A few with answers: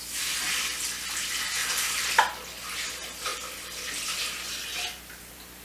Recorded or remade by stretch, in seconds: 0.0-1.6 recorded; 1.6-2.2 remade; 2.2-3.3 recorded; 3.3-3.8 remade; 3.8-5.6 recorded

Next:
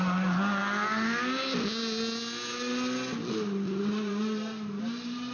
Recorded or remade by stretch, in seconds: 0.0-5.3 recorded

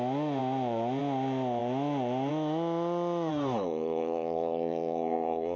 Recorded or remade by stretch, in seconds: 0.0-3.3 recorded; 3.3-5.6 remade

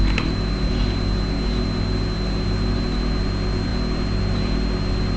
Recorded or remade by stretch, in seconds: 0.0-5.2 recorded